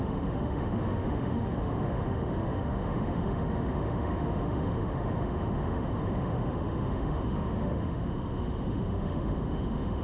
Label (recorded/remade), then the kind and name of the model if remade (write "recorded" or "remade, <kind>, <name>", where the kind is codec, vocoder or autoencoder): remade, autoencoder, DAC-VAE